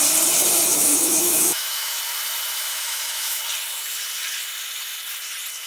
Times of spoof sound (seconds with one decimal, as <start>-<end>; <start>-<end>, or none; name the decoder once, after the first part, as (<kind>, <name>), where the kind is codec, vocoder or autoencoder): 0.7-2.0 (autoencoder, DAC-VAE); 2.7-3.4